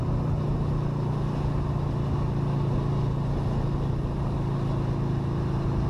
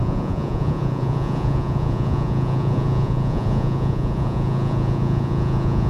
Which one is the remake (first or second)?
second